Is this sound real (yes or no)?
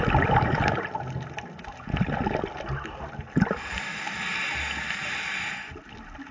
yes